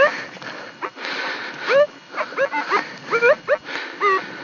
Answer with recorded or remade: recorded